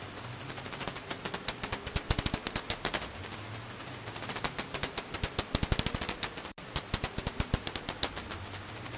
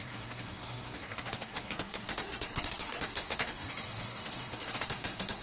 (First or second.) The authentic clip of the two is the first